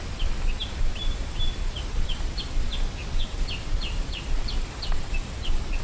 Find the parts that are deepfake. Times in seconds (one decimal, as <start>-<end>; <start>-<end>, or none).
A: none

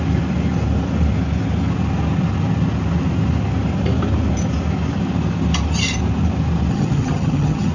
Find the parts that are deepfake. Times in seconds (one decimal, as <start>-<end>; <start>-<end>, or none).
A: 6.7-7.7

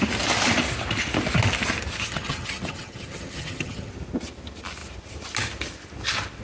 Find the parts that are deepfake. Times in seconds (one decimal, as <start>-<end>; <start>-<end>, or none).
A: 2.0-3.9